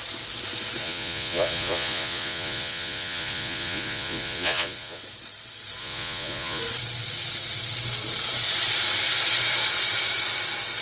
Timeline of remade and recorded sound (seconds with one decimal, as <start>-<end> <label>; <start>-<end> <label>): 0.0-0.8 recorded; 0.8-5.0 remade; 5.0-5.8 recorded; 5.8-6.6 remade; 6.6-10.8 recorded